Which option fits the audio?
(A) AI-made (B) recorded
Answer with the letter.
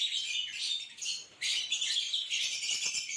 A